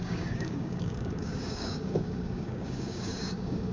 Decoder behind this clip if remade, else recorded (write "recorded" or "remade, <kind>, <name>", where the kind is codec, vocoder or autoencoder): remade, codec, DAC